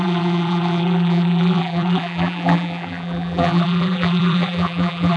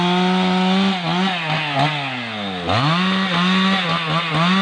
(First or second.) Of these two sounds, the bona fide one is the second